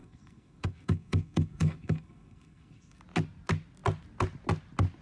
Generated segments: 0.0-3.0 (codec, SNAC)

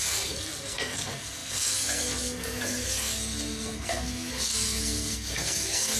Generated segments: 0.0-6.0 (codec, SNAC)

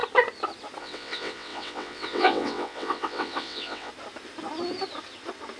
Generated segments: 0.8-3.9 (vocoder, WaveNeXt)

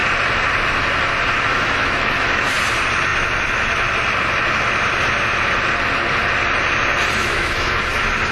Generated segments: 1.5-2.5 (autoencoder, DAC-VAE); 7.2-7.7

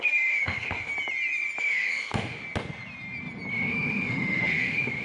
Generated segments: 0.0-0.9 (autoencoder, DAC-VAE); 1.6-2.4; 3.5-5.0

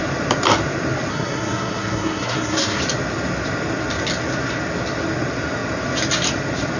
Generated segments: 1.1-2.8 (codec, SNAC)

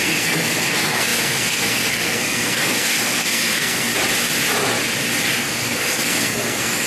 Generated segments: 0.0-3.9 (codec, SNAC); 5.4-6.9